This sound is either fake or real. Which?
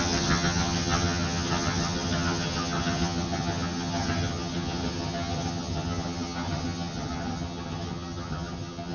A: fake